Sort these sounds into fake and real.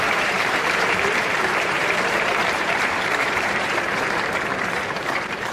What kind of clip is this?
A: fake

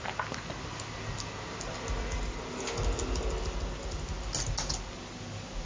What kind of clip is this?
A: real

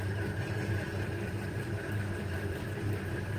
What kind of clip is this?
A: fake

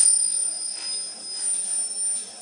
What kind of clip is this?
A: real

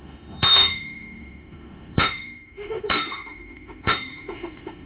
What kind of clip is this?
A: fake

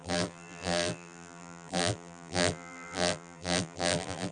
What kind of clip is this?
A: fake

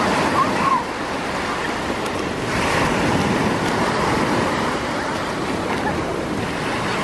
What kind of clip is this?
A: real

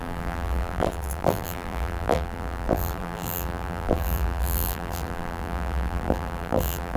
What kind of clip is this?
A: fake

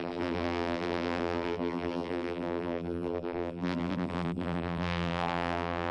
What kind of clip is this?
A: fake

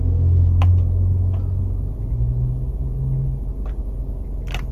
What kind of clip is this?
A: real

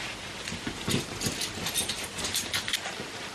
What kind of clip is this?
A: real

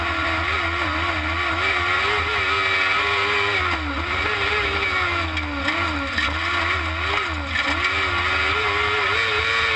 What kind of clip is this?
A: real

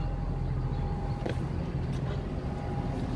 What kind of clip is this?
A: real